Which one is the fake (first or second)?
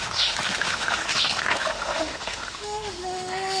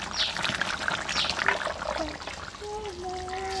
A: first